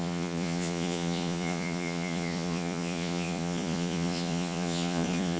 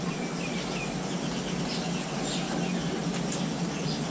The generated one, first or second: first